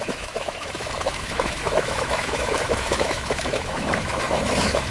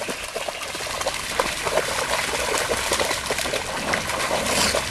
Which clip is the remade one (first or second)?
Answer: first